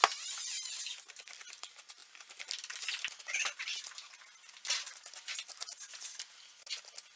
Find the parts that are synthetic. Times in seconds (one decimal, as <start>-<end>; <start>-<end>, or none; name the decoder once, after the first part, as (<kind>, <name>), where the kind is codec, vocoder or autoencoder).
none